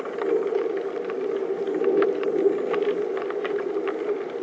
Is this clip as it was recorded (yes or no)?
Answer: yes